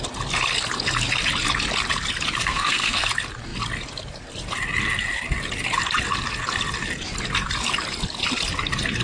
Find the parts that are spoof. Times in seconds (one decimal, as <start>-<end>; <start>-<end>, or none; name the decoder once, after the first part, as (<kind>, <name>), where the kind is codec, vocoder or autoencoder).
2.4-3.1 (codec, SNAC)

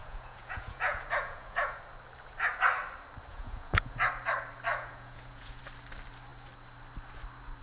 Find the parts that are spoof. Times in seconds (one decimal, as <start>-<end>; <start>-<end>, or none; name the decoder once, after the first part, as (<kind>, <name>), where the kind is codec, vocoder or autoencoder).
0.0-1.8 (vocoder, Vocos); 3.3-4.1; 4.7-5.6